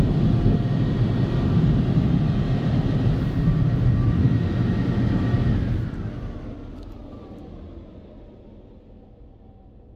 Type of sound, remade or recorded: recorded